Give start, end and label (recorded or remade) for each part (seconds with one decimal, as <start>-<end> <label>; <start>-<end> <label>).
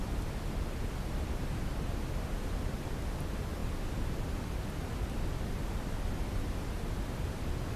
0.0-7.8 recorded